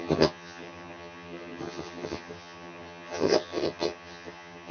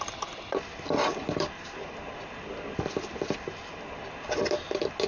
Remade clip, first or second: first